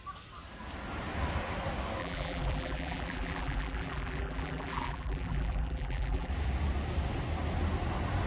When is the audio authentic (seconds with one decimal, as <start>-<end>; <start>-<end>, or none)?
0.0-2.0; 6.3-8.3